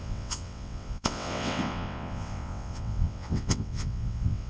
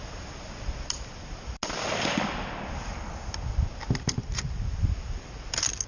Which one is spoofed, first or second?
first